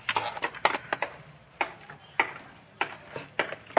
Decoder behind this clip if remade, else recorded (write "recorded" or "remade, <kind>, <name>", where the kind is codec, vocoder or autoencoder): recorded